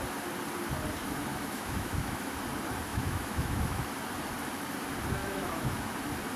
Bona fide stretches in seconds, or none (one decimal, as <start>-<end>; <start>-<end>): 0.0-1.3; 2.3-2.9; 3.9-5.2; 5.9-6.4

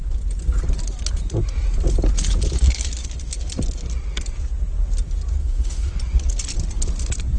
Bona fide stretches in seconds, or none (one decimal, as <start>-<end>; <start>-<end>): 0.0-5.4; 5.9-7.4

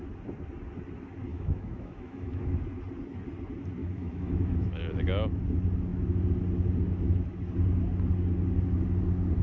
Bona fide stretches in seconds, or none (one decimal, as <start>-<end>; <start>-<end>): 0.0-1.3; 2.4-3.8; 4.8-9.4

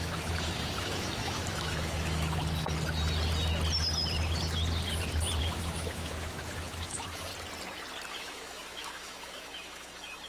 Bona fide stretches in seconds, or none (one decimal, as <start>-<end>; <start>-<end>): 2.4-5.4; 7.3-8.1